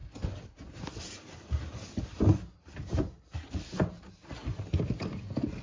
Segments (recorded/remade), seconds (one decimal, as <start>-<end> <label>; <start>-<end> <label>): 0.0-5.6 recorded